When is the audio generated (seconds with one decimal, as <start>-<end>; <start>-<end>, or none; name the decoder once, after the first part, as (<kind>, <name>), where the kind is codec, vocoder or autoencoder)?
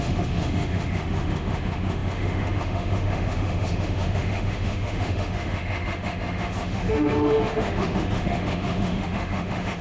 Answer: 0.0-9.8 (autoencoder, DAC-VAE)